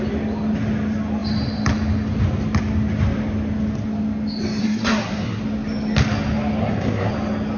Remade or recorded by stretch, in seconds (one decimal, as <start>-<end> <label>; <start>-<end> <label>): 0.0-4.6 recorded; 4.6-5.4 remade; 5.4-6.6 recorded; 6.6-7.1 remade; 7.1-7.6 recorded